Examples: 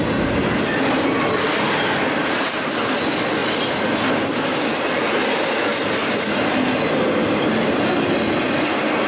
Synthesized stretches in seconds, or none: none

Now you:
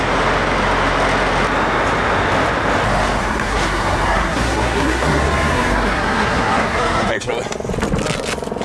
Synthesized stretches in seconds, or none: 3.2-7.3

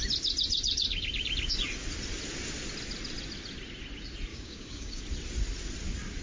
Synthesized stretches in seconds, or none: 4.3-5.0